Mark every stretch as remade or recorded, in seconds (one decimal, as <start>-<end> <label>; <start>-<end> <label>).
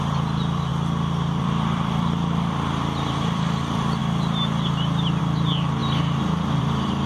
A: 0.0-0.7 remade; 0.7-1.4 recorded; 1.4-4.0 remade; 4.0-5.2 recorded; 5.2-5.8 remade; 5.8-6.6 recorded; 6.6-7.1 remade